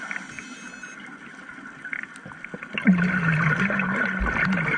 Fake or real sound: real